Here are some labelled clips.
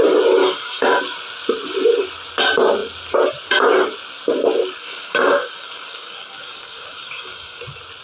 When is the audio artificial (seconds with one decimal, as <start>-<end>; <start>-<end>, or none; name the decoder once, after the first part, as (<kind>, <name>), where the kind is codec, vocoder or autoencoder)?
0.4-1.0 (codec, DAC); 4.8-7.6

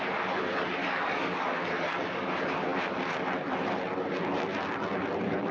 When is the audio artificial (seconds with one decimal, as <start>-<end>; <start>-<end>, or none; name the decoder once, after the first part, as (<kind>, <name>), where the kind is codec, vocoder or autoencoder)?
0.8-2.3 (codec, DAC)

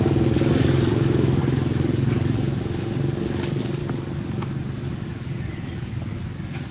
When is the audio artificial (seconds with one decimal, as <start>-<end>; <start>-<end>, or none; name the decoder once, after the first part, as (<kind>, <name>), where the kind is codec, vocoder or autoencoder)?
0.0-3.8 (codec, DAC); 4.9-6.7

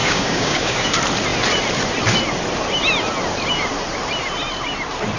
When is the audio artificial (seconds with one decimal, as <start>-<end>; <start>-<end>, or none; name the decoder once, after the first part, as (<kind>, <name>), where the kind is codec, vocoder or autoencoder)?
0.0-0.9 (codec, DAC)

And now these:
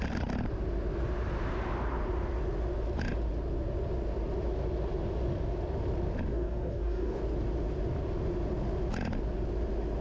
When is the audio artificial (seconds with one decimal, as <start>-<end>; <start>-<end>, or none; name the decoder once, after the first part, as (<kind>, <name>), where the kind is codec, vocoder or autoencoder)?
6.3-7.2 (codec, DAC)

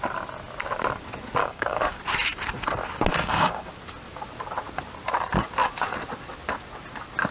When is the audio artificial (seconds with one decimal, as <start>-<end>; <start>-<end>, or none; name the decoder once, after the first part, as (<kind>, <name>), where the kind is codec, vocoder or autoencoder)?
1.4-2.0 (codec, DAC); 3.2-3.7